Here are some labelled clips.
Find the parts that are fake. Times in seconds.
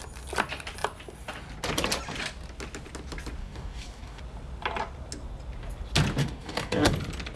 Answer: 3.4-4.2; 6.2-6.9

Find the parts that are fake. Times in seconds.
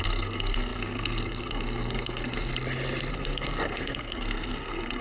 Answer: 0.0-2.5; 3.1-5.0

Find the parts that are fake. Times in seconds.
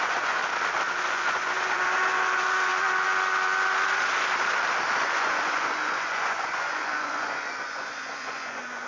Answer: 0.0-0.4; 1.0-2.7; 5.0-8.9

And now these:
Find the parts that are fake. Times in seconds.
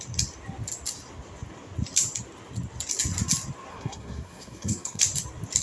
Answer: 3.7-5.0